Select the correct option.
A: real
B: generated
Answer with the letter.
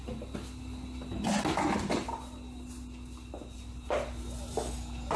A